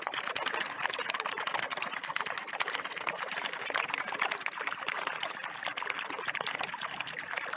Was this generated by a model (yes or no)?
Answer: no